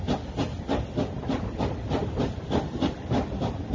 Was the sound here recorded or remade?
recorded